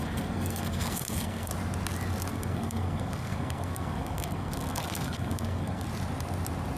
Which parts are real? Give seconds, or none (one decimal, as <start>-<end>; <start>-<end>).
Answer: 1.5-2.3; 5.9-6.8